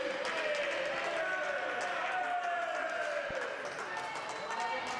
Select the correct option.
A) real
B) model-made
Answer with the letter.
A